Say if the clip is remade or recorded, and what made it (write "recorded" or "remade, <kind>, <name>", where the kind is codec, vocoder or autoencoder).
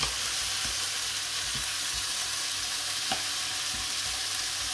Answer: recorded